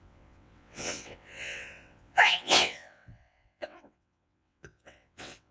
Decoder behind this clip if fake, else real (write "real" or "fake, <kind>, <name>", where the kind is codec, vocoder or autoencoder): fake, vocoder, WaveNeXt